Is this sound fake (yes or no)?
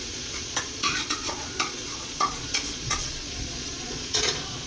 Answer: yes